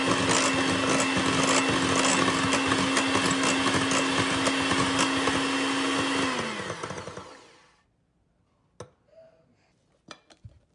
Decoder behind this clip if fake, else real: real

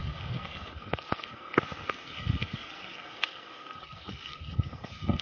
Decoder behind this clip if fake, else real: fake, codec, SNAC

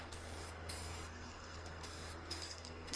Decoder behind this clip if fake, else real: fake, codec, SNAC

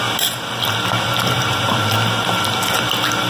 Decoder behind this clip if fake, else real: real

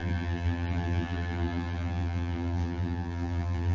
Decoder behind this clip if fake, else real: fake, vocoder, BigVGAN v2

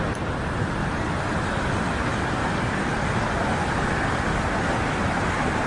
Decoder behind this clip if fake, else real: real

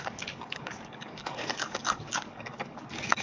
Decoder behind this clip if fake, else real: fake, codec, DAC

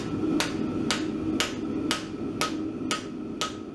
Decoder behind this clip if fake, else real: real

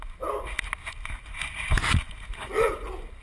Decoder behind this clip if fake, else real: real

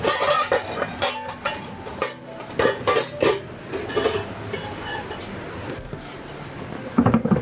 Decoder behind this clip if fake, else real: real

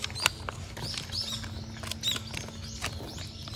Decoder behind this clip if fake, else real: real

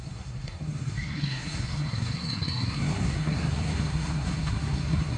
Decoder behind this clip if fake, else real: fake, codec, SNAC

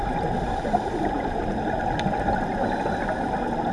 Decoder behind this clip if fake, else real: real